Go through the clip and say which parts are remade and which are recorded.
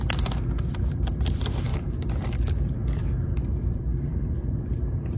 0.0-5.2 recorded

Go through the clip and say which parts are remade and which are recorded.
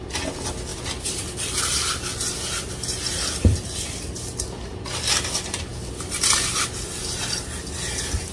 0.0-0.7 recorded; 0.7-4.8 remade; 4.8-8.3 recorded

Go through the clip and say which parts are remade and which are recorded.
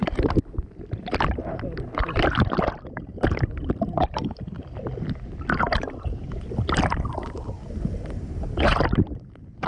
0.0-0.8 remade; 0.8-9.7 recorded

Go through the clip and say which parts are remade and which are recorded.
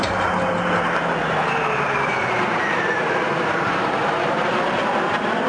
0.0-1.2 recorded; 1.2-4.5 remade; 4.5-5.5 recorded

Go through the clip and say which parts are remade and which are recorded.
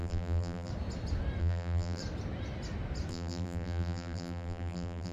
0.0-0.7 remade; 0.7-1.4 recorded; 1.4-2.0 remade; 2.0-3.1 recorded; 3.1-5.1 remade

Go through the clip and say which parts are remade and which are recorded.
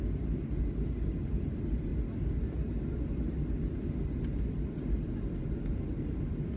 0.0-6.6 recorded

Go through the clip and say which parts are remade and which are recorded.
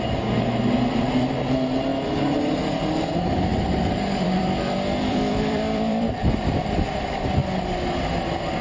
0.0-3.5 recorded; 3.5-6.5 remade; 6.5-8.6 recorded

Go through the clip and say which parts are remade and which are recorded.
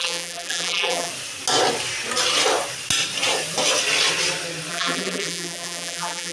0.0-1.1 remade; 1.1-4.7 recorded; 4.7-6.3 remade